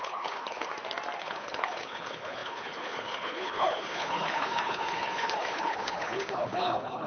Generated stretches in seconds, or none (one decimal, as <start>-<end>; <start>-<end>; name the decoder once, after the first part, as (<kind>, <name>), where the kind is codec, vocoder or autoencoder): 0.0-0.7 (codec, HILCodec); 1.2-7.1